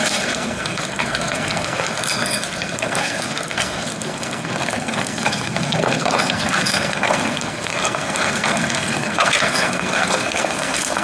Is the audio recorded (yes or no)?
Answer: no